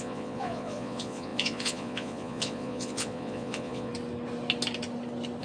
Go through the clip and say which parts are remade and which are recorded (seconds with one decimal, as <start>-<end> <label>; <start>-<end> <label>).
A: 0.0-3.9 remade; 3.9-5.4 recorded